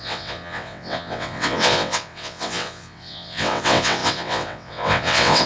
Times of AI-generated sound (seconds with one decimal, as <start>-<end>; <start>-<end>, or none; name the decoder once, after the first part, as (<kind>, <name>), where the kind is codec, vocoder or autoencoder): 0.0-5.5 (vocoder, WaveNeXt)